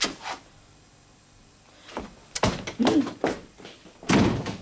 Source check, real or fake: real